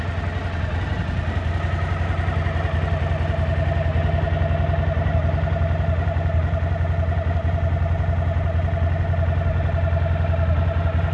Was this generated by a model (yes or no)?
no